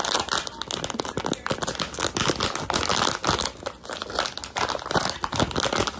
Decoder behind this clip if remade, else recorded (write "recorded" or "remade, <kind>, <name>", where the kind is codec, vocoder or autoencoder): recorded